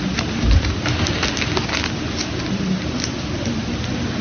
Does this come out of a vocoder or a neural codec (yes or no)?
no